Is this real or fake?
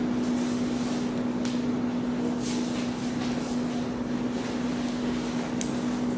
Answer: real